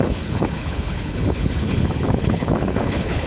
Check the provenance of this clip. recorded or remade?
remade